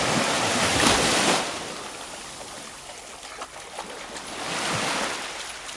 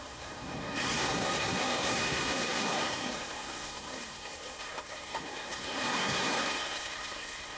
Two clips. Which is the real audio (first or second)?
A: first